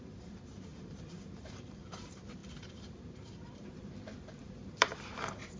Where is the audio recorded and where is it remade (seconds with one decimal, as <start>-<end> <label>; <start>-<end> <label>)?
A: 0.0-5.6 remade